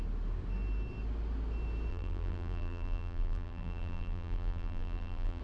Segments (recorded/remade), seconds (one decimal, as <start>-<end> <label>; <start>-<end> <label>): 0.0-1.9 recorded; 1.9-5.4 remade